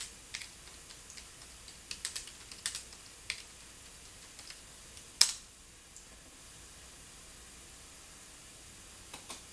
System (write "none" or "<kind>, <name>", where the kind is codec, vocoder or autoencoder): none